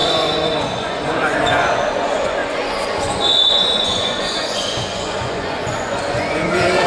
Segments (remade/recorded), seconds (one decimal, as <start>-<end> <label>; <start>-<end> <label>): 0.0-6.9 remade